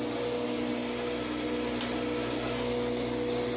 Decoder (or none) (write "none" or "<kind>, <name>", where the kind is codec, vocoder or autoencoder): none